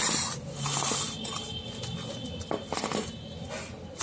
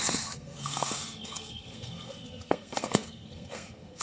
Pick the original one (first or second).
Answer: first